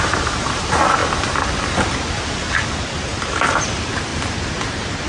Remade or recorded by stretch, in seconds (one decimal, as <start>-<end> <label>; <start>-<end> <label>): 0.0-1.0 remade; 1.0-2.6 recorded; 2.6-5.1 remade